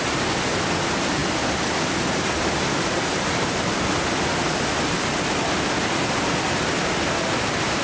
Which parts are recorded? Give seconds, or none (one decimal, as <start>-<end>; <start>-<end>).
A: 0.0-7.8